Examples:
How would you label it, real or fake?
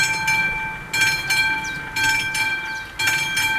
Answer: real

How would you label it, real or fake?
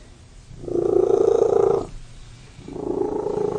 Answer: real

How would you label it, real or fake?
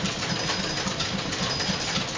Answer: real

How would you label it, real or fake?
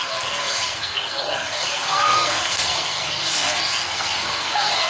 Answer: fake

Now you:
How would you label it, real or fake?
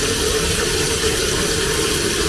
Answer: real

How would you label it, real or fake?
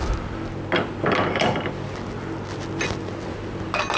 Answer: real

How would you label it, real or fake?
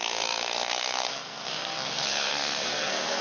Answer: fake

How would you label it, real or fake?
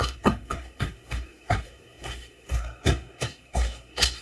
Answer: fake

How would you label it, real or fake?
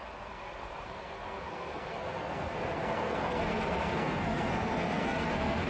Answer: fake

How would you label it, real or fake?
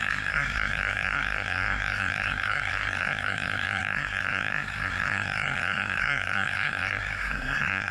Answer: fake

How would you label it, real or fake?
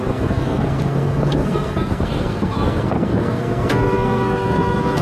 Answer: fake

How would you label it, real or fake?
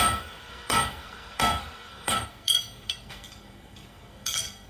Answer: fake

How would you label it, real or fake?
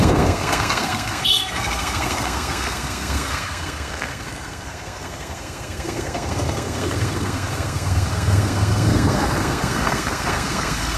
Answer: fake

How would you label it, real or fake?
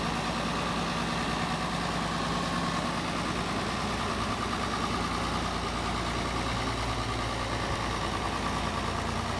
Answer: real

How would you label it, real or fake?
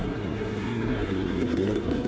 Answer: fake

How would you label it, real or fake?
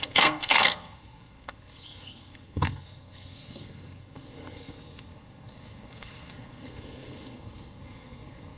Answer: fake